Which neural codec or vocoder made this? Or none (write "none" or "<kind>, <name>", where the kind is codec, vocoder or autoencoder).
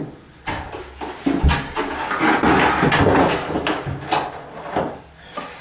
none